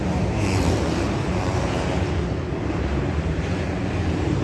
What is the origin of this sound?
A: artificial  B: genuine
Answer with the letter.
A